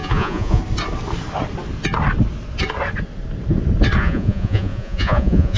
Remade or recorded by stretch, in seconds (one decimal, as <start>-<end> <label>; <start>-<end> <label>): 0.0-0.6 remade; 0.6-4.0 recorded; 4.0-5.6 remade